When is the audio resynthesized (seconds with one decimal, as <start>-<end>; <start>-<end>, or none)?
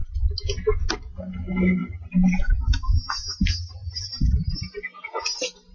0.0-0.6; 1.8-2.4; 3.8-4.5